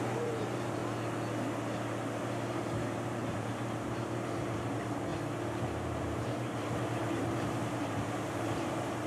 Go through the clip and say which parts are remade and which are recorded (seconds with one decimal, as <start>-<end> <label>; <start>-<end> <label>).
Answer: 0.0-0.8 remade; 0.8-2.2 recorded; 2.2-5.1 remade; 5.1-5.6 recorded; 5.6-9.1 remade